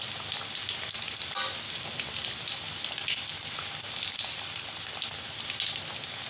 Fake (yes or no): no